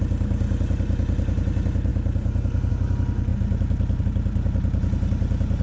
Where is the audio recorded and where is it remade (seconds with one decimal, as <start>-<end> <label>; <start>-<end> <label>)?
0.0-5.6 recorded